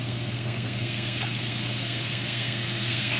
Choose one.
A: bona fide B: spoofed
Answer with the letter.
B